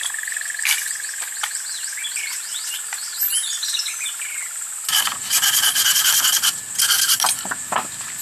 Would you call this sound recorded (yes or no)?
yes